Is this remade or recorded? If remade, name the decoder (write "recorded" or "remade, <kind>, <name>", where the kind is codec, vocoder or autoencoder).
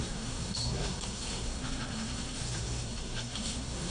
remade, codec, SNAC